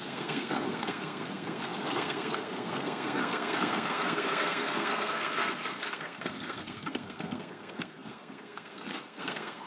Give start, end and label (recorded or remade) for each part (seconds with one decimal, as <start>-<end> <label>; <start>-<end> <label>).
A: 0.0-9.7 remade